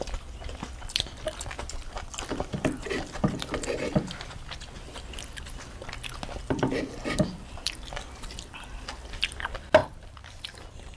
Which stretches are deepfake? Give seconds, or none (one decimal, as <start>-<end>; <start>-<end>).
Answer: 0.0-5.8; 6.4-11.0